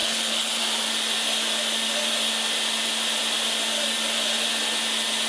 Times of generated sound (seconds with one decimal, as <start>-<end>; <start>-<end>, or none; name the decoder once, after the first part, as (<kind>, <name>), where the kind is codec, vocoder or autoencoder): 0.0-0.6 (codec, HILCodec)